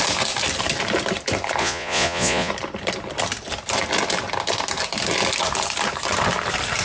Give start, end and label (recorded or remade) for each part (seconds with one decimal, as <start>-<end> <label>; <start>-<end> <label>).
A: 0.0-1.6 recorded; 1.6-2.5 remade; 2.5-6.8 recorded